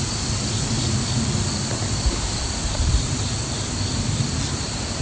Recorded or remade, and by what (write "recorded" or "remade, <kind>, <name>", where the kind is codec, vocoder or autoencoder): recorded